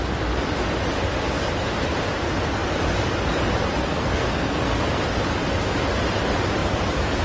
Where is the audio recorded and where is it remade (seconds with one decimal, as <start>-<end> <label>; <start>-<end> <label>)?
0.0-3.8 recorded; 3.8-5.0 remade; 5.0-7.2 recorded